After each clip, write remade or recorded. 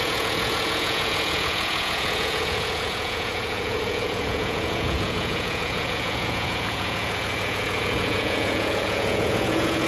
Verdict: remade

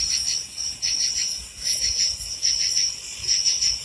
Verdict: recorded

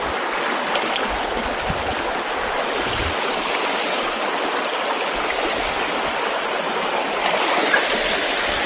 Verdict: recorded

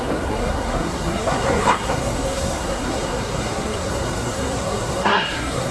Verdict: remade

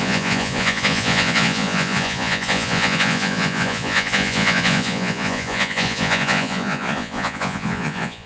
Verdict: remade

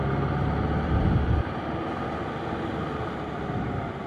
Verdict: recorded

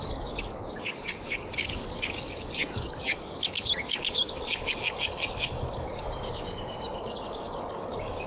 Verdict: remade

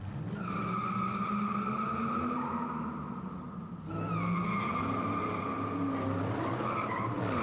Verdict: recorded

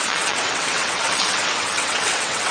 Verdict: remade